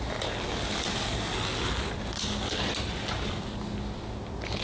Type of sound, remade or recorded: recorded